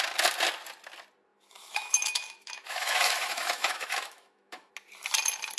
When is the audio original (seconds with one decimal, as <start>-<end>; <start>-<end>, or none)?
0.0-1.3; 4.7-5.6